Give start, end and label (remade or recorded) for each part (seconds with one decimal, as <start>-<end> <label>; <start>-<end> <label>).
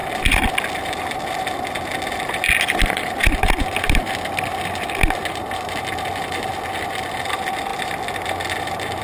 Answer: 0.0-9.0 recorded